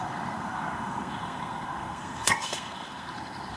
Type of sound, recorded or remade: remade